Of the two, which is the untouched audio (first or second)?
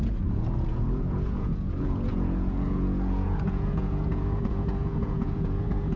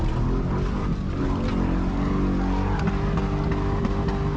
second